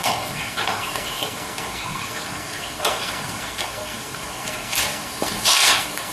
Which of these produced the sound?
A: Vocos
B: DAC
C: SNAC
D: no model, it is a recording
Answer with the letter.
C